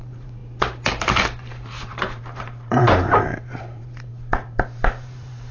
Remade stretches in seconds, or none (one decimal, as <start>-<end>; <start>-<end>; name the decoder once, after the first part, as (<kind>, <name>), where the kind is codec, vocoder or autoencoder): 0.0-5.5 (vocoder, BigVGAN v2)